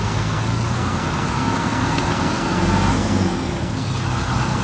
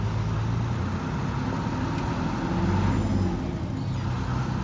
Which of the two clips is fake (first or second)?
first